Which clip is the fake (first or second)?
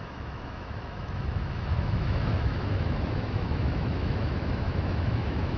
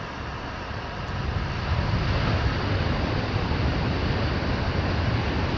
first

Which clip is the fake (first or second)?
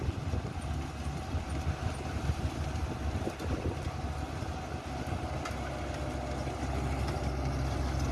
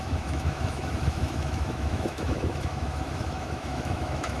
second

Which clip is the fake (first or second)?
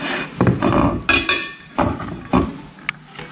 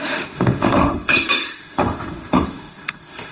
second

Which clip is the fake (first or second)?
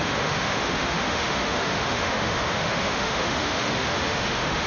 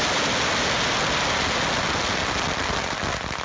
first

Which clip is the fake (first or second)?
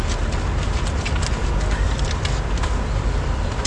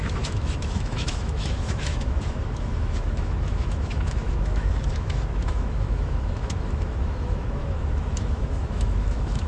second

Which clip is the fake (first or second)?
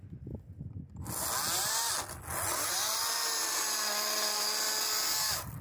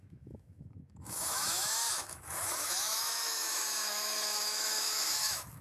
second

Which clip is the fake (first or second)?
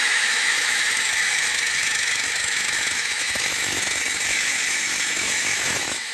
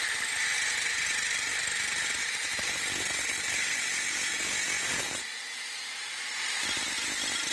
first